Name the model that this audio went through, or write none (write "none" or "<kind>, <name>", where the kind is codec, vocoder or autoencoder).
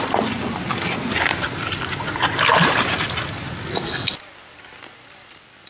none